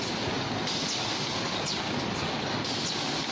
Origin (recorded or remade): recorded